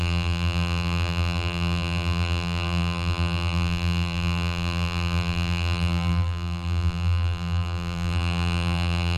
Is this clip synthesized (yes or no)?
yes